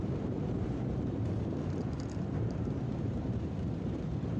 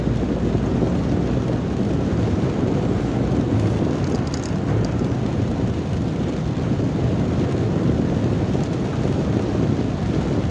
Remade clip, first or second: first